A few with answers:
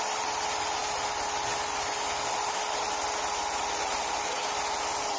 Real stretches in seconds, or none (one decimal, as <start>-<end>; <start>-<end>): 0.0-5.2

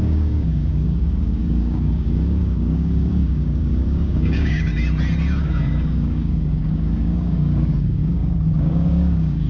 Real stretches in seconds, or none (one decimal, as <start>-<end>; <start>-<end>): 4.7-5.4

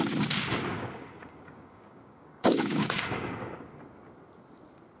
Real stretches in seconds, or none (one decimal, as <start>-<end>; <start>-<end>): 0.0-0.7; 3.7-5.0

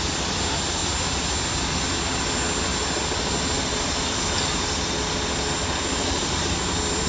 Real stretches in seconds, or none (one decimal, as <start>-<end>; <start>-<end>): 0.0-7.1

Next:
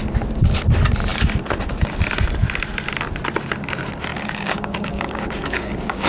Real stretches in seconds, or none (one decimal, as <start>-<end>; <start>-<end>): 0.0-4.1

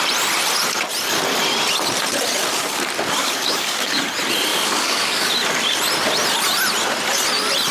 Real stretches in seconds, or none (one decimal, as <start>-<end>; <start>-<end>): 0.0-3.2; 4.0-4.5; 5.3-7.7

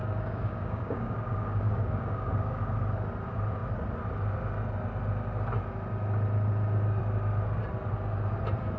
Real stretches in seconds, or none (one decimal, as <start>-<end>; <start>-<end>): 2.6-8.8

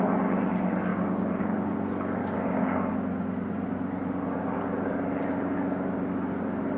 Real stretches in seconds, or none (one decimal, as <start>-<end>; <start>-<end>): 0.0-2.2; 2.9-6.8